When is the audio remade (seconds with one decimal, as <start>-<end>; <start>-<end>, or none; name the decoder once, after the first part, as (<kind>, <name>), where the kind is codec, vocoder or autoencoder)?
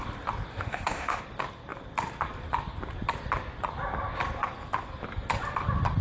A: 0.5-1.2 (autoencoder, DAC-VAE)